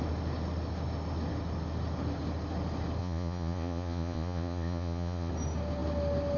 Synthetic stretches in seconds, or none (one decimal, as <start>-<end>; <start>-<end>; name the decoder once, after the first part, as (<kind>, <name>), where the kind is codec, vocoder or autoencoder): 3.0-5.3 (vocoder, Vocos)